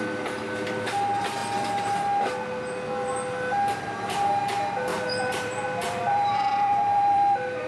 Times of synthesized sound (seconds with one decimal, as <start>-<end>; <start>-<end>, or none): 4.9-7.7